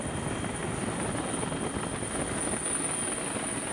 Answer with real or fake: real